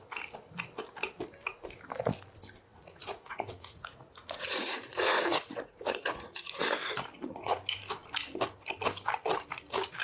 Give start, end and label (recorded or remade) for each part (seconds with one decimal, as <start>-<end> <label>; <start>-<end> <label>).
0.0-2.7 recorded; 2.7-6.6 remade; 6.6-7.1 recorded; 7.1-7.6 remade; 7.6-10.0 recorded